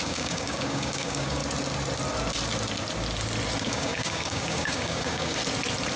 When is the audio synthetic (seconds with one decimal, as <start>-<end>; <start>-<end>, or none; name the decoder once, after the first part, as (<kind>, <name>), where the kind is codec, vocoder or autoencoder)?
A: 0.0-1.4 (codec, DAC); 3.6-5.4

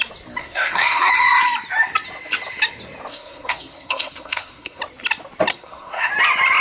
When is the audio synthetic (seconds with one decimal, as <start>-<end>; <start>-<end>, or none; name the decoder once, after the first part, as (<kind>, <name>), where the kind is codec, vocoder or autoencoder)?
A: 0.4-1.1 (codec, SNAC); 3.1-4.8; 5.5-6.1

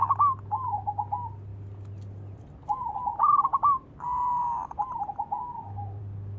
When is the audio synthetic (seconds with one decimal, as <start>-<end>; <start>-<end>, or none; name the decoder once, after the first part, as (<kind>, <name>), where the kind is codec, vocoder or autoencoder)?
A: none

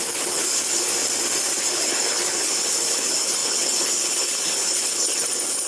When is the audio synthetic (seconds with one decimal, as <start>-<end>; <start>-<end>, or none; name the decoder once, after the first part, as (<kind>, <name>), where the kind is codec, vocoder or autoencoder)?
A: 0.0-0.9 (codec, HILCodec); 1.6-5.7

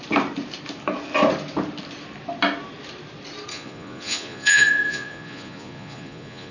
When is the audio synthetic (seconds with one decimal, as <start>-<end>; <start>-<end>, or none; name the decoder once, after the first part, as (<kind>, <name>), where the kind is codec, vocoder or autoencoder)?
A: 3.5-6.5 (vocoder, Vocos)